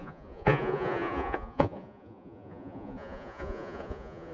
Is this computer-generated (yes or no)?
yes